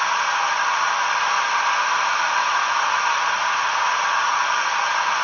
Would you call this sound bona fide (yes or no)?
yes